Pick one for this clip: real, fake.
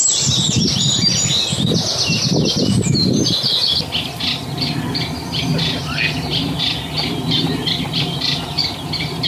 real